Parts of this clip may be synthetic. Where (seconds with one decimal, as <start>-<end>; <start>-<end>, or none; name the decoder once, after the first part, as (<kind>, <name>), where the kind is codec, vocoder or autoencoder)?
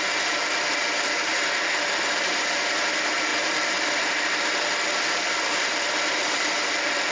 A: none